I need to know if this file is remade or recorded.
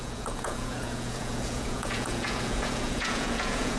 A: remade